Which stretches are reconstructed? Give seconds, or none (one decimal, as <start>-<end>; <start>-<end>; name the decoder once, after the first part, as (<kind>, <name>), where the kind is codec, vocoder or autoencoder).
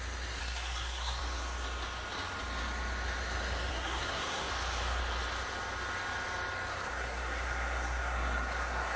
0.4-1.2 (codec, SNAC); 3.7-4.5; 6.7-9.0